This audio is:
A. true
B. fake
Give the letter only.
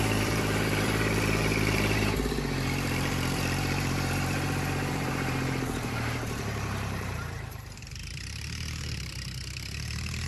B